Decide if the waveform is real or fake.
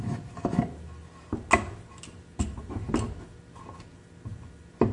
real